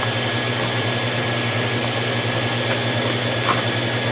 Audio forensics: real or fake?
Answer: real